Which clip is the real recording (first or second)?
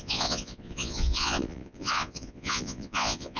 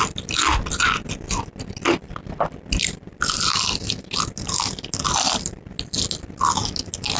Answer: second